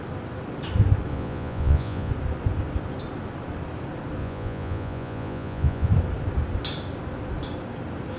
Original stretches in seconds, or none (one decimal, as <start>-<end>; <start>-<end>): 0.0-1.1; 2.1-4.2; 5.9-8.2